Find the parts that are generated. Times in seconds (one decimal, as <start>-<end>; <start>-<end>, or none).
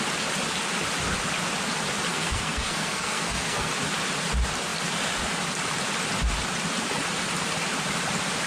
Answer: 2.1-3.7